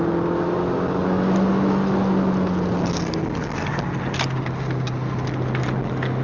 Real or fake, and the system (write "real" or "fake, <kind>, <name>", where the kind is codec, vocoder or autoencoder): real